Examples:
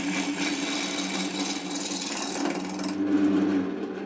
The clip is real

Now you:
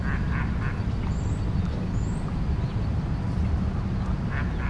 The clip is real